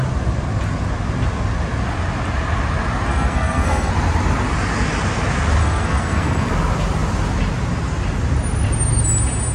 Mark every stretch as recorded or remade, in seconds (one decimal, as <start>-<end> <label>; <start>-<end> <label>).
0.0-3.1 recorded; 3.1-3.9 remade; 3.9-5.6 recorded; 5.6-6.5 remade; 6.5-9.5 recorded